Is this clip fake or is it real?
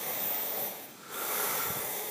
fake